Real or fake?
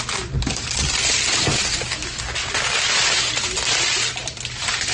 real